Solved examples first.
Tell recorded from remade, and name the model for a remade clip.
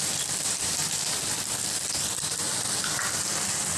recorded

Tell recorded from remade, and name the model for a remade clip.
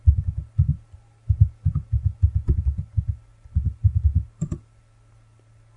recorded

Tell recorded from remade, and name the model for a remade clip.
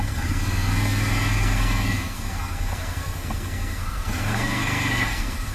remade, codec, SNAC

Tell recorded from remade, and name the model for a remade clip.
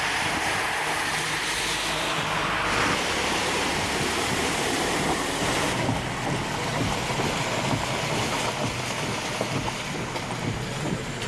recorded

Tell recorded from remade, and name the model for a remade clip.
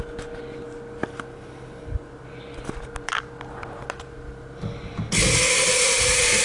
recorded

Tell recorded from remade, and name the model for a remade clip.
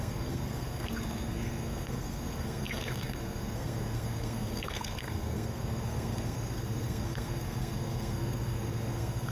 remade, codec, SNAC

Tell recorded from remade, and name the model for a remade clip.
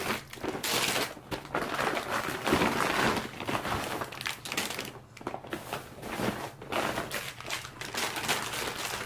recorded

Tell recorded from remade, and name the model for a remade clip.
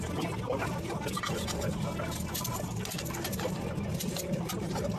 recorded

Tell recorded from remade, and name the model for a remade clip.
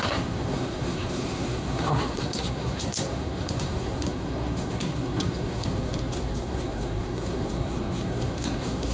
remade, codec, SNAC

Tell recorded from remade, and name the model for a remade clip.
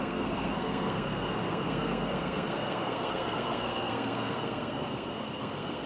remade, codec, SNAC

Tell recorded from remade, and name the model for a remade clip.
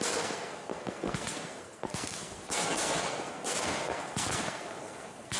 remade, codec, SNAC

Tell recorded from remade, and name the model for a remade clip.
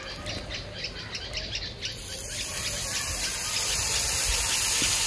recorded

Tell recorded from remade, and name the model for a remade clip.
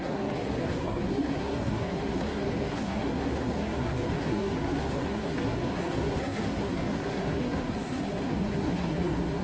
remade, codec, SNAC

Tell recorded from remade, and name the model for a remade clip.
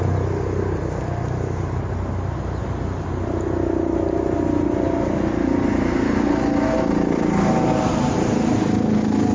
recorded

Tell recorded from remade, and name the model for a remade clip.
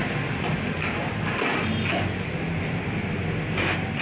recorded